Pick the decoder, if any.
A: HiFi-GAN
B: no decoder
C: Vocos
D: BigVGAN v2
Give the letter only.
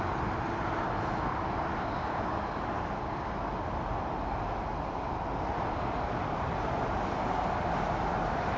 B